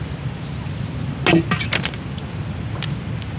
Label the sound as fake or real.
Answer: real